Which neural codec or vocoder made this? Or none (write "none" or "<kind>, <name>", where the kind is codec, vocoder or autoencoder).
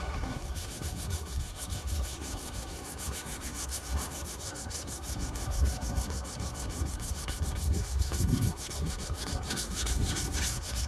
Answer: codec, SNAC